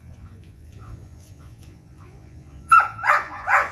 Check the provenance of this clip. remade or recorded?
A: remade